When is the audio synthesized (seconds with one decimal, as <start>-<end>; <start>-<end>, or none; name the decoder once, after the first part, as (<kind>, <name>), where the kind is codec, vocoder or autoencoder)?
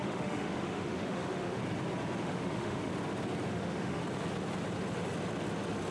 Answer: 0.0-1.6 (autoencoder, DAC-VAE); 2.2-2.9; 3.5-4.0